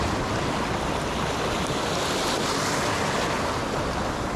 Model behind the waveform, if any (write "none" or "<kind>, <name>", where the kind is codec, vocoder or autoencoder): none